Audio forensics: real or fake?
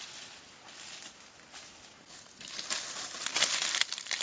real